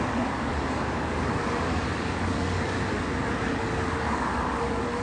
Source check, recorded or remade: remade